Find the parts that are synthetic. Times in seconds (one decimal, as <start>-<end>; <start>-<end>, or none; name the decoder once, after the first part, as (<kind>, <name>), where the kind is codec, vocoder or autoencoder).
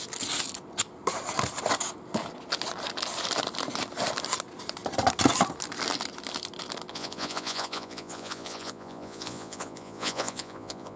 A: 6.9-11.0 (vocoder, Vocos)